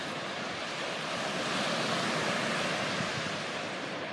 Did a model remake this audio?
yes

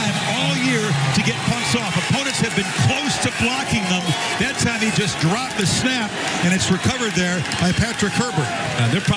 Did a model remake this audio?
no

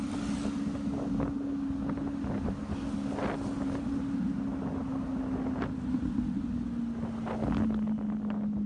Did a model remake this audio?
no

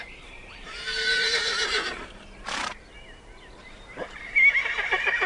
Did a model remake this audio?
yes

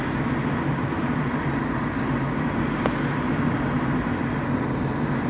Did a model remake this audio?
no